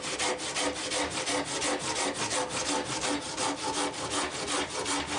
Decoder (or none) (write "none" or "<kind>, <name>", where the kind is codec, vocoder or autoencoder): none